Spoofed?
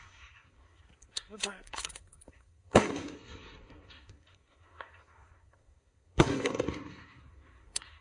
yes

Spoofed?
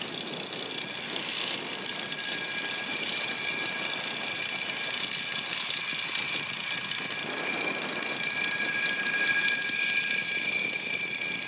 no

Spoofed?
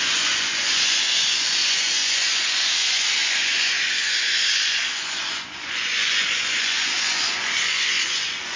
yes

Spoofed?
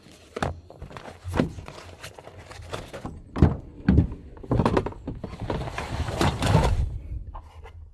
no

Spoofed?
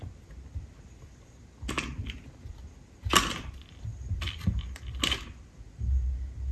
no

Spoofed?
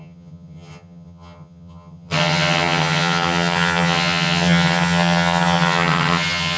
yes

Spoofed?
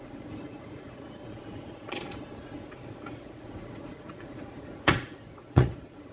yes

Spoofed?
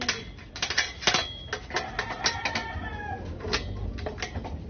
no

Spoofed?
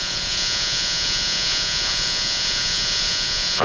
yes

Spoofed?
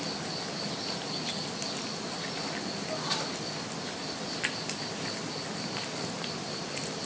no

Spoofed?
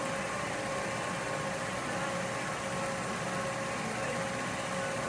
no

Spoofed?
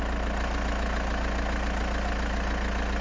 no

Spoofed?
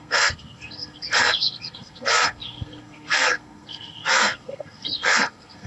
yes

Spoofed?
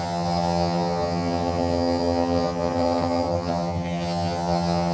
yes